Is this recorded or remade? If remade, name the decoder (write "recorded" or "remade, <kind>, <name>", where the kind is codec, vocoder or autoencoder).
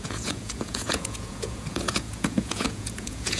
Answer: remade, vocoder, Vocos